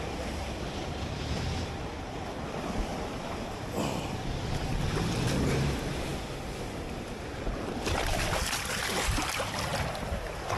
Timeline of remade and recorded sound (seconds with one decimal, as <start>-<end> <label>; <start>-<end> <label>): 0.0-6.1 remade; 6.1-6.6 recorded; 6.6-9.7 remade; 9.7-10.6 recorded